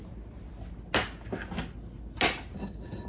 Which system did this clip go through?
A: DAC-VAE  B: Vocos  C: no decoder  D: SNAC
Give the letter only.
C